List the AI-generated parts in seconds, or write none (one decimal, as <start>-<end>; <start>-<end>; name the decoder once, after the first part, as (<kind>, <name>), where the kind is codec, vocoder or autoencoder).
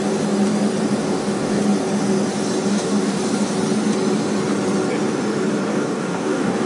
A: 1.0-1.6 (codec, DAC); 2.7-3.2; 5.7-6.7